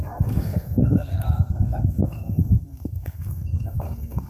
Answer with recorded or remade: remade